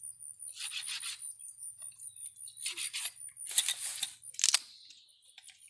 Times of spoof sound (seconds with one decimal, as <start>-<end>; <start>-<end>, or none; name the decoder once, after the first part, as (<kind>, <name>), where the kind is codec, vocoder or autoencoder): none

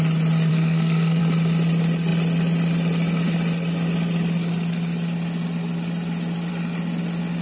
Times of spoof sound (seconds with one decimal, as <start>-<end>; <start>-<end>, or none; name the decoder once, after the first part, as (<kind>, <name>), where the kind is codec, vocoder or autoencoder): 0.5-1.2 (codec, SNAC)

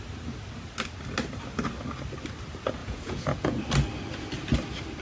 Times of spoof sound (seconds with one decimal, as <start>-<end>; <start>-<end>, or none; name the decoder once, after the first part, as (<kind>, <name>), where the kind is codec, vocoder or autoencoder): 2.8-3.6 (vocoder, Vocos)

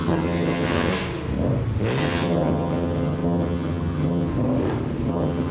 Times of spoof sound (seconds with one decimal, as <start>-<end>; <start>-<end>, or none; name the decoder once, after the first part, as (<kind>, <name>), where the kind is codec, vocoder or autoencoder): 0.0-0.9 (vocoder, HiFi-GAN); 2.0-4.3; 5.1-5.5

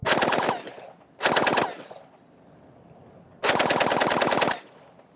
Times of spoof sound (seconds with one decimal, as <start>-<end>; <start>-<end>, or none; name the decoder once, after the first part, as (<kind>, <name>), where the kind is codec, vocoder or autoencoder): none